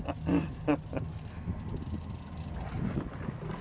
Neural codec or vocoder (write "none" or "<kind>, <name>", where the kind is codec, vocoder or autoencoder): none